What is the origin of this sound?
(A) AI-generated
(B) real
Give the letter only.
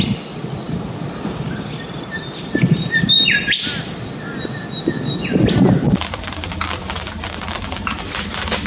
A